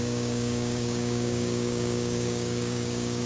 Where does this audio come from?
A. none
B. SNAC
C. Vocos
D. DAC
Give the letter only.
D